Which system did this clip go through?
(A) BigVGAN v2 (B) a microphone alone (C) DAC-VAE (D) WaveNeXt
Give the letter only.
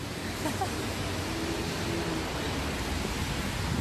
B